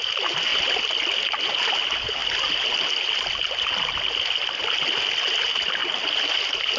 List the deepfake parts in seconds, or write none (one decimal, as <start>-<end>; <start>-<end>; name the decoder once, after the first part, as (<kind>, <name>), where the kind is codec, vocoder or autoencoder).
none